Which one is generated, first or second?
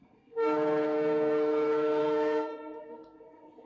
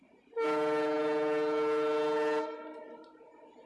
first